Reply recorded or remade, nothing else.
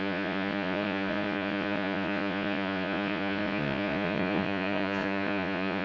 remade